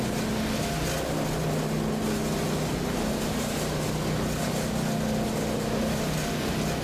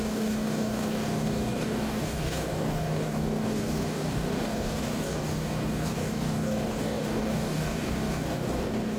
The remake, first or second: second